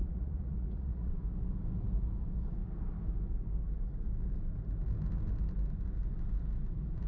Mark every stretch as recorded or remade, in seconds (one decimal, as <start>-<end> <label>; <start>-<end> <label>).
0.0-1.1 remade; 1.1-7.1 recorded